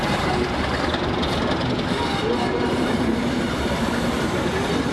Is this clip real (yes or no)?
no